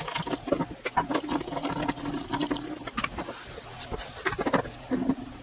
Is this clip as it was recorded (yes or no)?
yes